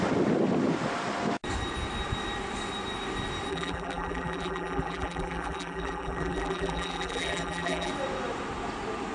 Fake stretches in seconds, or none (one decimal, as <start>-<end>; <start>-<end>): 3.5-7.9